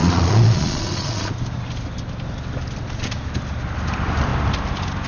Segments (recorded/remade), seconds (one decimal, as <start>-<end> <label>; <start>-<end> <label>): 0.0-1.3 remade; 1.3-5.1 recorded